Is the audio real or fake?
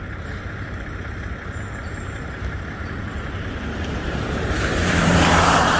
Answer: fake